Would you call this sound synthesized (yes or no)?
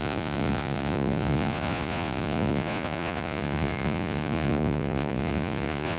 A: yes